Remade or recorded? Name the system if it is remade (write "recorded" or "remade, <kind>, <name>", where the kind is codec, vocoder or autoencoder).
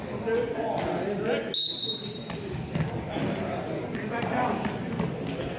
recorded